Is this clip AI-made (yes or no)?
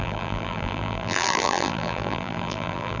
yes